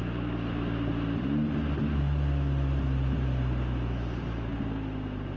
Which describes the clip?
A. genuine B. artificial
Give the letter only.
A